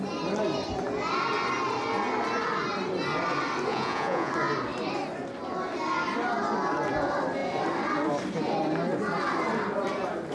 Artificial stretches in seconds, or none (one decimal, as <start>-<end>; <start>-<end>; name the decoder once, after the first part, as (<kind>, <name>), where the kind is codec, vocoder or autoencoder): 3.7-4.3 (vocoder, Vocos)